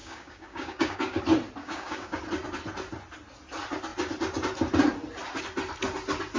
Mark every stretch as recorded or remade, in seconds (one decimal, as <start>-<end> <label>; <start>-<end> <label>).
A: 0.0-1.2 remade; 1.2-1.6 recorded; 1.6-2.2 remade; 2.2-6.4 recorded